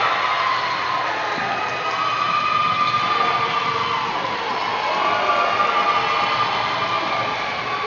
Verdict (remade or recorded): recorded